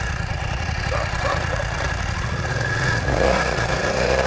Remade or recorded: remade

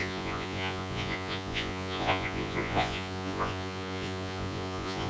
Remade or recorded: remade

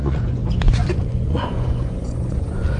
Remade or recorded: remade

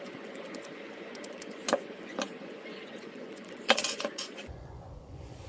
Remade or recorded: remade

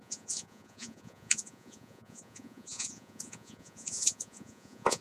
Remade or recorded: remade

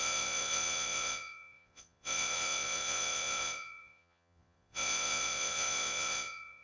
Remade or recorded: remade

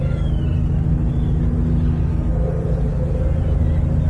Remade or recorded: recorded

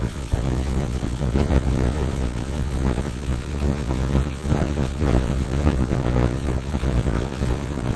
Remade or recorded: remade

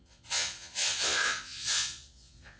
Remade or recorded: remade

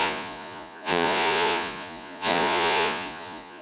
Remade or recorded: remade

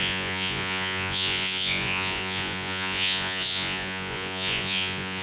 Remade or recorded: remade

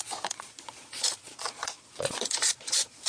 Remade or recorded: remade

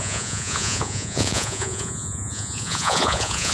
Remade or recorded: remade